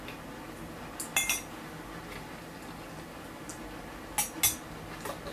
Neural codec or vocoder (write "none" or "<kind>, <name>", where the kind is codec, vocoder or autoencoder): none